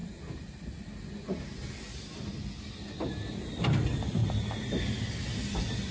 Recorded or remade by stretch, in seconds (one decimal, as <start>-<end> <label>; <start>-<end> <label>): 0.0-5.9 recorded